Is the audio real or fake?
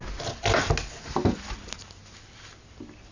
real